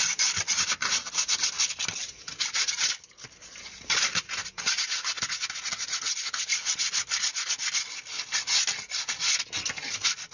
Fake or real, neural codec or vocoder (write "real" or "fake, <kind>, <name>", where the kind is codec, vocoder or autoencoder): real